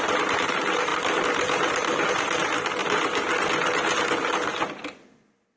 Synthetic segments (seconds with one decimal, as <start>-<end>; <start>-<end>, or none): none

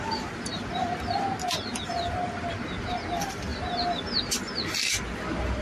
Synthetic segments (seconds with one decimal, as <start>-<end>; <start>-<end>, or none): none

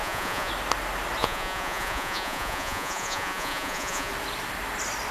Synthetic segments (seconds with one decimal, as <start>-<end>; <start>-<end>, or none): 0.0-0.5; 1.2-4.1

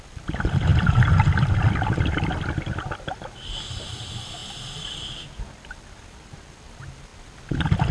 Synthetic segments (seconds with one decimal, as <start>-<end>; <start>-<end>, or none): none

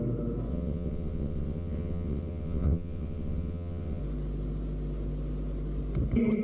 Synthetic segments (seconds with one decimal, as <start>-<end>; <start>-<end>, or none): 0.5-4.0

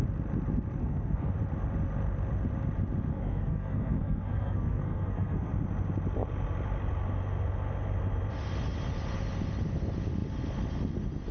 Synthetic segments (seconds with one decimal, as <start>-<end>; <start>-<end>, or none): 0.8-1.3; 3.1-5.5

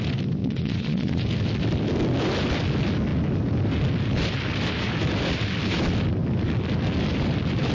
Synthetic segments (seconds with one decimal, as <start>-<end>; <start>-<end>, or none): 0.4-1.2

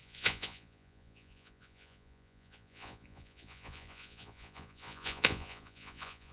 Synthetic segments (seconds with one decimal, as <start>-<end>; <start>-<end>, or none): 0.0-6.3